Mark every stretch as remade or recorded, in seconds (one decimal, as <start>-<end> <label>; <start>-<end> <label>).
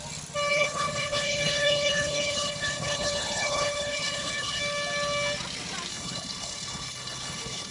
0.0-0.5 recorded; 0.5-4.6 remade; 4.6-5.9 recorded; 5.9-7.7 remade